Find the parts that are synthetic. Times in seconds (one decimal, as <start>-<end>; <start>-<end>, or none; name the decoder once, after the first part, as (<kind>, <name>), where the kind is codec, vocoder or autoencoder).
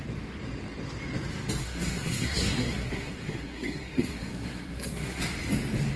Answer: 1.6-5.2 (codec, SNAC)